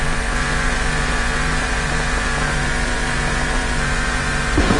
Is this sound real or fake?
fake